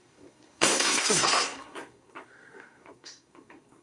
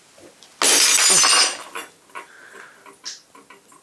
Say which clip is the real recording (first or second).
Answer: second